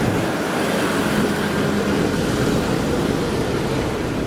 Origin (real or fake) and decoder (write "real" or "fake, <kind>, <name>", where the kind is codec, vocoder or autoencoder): real